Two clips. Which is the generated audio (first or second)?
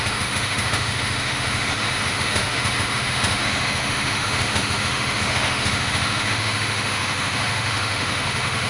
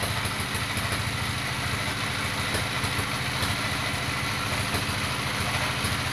first